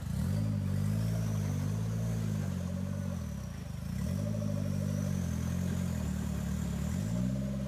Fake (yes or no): no